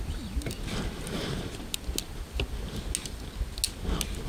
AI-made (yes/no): no